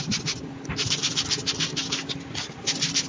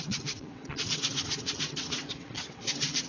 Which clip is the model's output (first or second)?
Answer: second